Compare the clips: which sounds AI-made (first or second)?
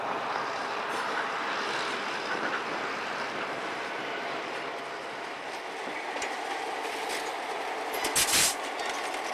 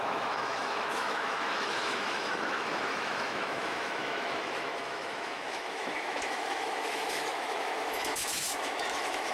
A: second